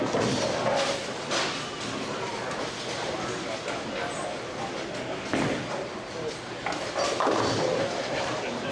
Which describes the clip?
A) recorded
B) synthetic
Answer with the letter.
A